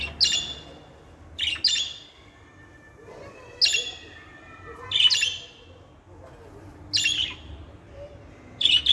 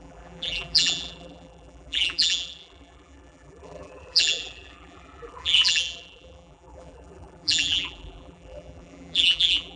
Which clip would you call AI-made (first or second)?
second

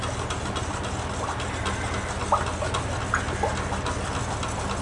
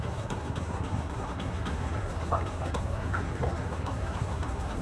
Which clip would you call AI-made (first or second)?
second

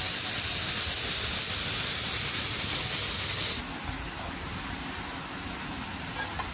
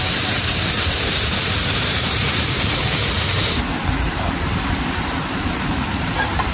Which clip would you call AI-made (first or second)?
second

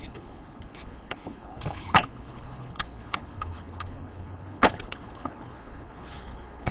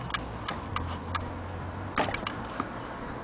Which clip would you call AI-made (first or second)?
first